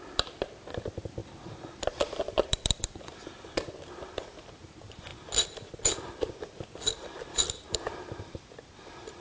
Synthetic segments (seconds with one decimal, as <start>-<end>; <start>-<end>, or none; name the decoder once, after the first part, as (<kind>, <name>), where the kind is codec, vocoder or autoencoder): 0.0-5.1 (vocoder, BigVGAN v2); 6.0-9.2